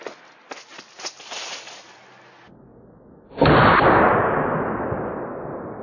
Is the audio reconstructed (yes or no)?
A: no